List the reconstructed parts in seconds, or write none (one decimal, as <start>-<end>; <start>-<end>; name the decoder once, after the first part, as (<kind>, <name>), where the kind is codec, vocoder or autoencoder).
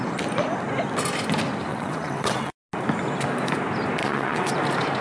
1.7-2.5 (vocoder, WaveNeXt); 4.0-4.5